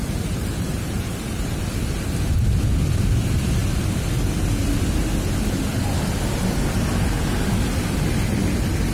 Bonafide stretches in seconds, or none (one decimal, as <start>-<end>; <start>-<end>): 1.6-8.9